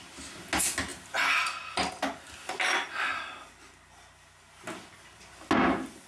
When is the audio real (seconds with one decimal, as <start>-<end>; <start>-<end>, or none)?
0.0-6.1